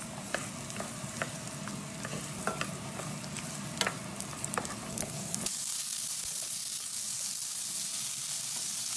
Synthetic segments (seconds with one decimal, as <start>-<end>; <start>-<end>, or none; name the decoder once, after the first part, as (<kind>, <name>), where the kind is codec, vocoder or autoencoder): 4.9-5.4 (codec, SNAC)